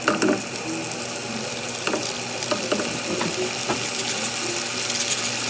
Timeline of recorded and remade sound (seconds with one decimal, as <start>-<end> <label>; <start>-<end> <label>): 0.0-5.5 recorded